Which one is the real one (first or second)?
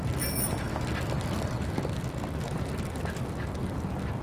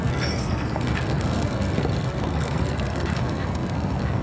first